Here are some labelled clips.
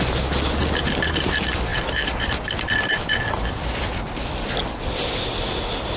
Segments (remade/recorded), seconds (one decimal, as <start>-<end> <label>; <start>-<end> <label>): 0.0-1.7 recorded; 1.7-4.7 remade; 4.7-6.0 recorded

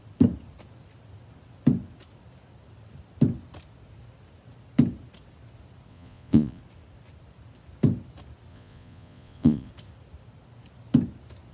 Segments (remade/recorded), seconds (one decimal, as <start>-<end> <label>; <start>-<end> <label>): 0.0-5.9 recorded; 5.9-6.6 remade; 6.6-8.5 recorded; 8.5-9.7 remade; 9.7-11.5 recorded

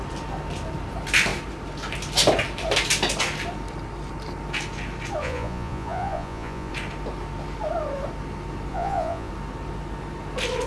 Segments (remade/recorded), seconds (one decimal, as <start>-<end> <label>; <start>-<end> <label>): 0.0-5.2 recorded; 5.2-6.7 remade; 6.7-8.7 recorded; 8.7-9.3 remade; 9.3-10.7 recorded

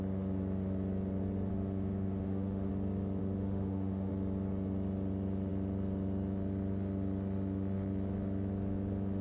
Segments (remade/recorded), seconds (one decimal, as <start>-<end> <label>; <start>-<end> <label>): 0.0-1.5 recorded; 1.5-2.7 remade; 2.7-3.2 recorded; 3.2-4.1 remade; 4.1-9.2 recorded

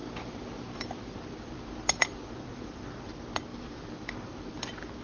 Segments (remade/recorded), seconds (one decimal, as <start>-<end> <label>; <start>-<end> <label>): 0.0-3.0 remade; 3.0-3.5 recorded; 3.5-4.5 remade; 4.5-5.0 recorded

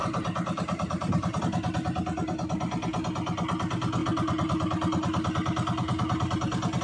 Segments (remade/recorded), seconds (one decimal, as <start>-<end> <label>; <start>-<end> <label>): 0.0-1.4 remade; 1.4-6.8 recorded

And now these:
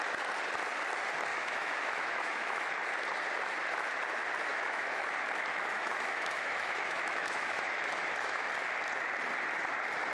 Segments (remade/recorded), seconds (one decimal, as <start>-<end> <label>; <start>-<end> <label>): 0.0-1.3 recorded; 1.3-2.7 remade; 2.7-4.5 recorded; 4.5-5.0 remade; 5.0-5.5 recorded; 5.5-8.5 remade; 8.5-10.1 recorded